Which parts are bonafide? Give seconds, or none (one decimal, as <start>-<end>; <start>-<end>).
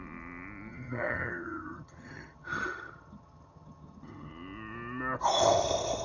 0.0-0.7; 4.3-6.0